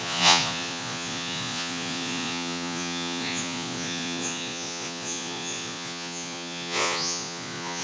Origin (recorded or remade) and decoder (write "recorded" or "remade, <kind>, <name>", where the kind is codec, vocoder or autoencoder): remade, vocoder, Vocos